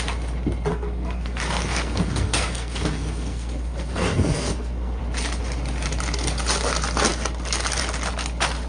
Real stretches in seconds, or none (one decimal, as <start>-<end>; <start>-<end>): 0.0-0.7; 5.0-8.7